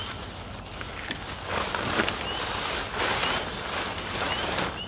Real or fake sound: real